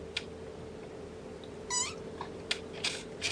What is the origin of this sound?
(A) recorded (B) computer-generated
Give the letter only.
A